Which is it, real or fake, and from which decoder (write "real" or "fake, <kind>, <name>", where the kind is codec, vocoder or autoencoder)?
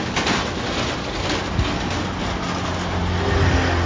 real